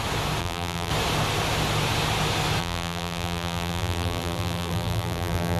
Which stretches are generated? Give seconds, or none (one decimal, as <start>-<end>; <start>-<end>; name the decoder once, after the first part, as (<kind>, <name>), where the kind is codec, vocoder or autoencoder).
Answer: 0.4-0.9 (vocoder, BigVGAN v2); 2.6-5.6